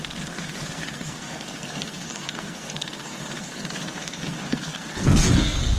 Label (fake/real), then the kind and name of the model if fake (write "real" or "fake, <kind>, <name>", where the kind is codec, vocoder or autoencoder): fake, codec, SNAC